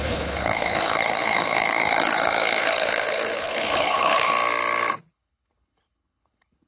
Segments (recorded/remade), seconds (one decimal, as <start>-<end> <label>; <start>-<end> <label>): 0.0-4.3 remade; 4.3-5.1 recorded; 5.1-6.7 remade